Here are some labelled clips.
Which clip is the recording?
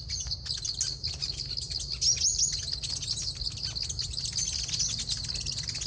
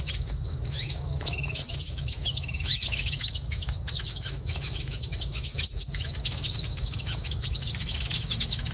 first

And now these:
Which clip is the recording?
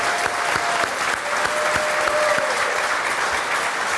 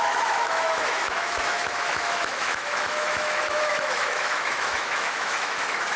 first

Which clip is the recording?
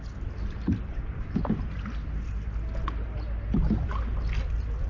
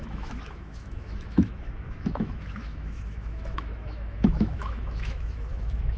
first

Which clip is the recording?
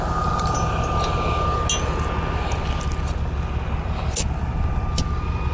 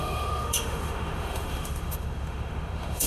first